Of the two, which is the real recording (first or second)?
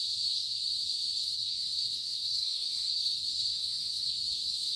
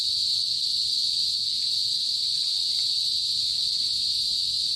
second